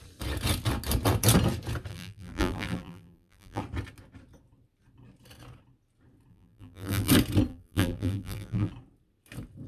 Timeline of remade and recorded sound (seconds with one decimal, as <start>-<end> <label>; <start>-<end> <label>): 0.0-1.9 recorded; 1.9-3.6 remade; 3.6-6.3 recorded; 6.3-7.1 remade; 7.1-7.5 recorded; 7.5-8.7 remade; 8.7-9.7 recorded